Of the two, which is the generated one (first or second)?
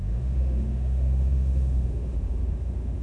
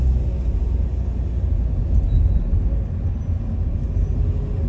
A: first